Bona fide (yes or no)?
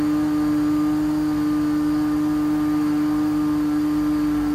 yes